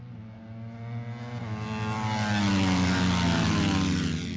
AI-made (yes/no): no